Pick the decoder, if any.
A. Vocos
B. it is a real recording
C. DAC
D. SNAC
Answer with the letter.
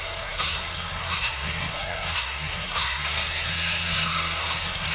D